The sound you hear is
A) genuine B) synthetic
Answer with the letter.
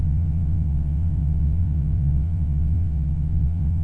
B